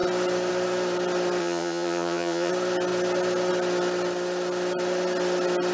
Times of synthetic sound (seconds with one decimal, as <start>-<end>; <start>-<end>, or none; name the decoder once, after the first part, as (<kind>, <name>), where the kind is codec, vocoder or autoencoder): 1.4-2.5 (vocoder, HiFi-GAN)